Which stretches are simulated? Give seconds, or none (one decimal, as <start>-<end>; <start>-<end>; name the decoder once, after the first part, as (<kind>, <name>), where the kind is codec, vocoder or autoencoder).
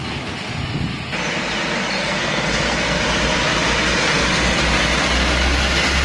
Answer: 2.0-3.0 (codec, SNAC)